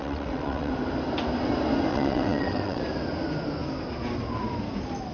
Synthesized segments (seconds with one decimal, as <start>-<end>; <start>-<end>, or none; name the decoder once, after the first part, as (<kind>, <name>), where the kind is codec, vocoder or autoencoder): 0.0-0.7 (vocoder, WaveNeXt); 1.9-2.8